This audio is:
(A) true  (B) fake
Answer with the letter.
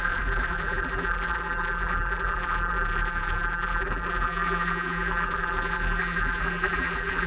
B